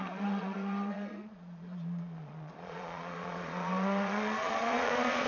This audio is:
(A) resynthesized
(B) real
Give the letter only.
A